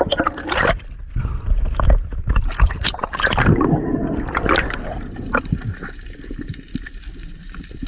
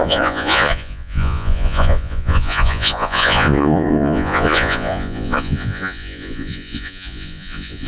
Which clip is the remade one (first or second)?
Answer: second